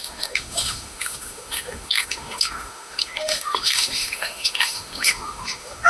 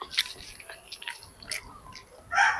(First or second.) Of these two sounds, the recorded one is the second